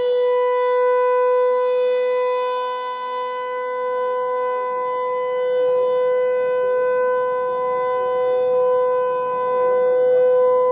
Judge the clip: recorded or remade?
recorded